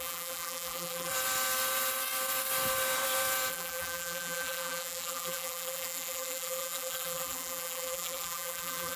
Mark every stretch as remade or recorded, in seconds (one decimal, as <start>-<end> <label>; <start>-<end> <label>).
0.0-1.1 remade; 1.1-3.5 recorded; 3.5-9.0 remade